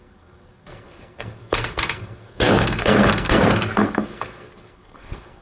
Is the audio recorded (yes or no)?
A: no